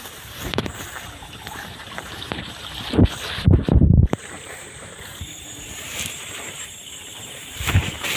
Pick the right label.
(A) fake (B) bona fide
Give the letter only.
A